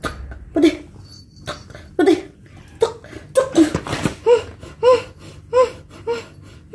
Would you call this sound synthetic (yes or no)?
no